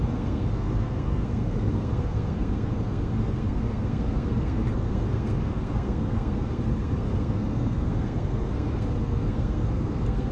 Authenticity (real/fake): fake